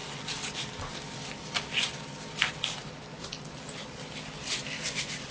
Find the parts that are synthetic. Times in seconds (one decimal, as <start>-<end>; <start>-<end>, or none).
none